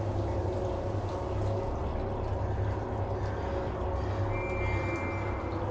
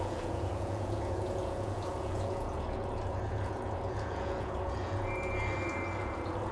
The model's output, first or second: second